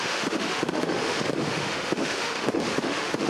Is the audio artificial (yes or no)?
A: yes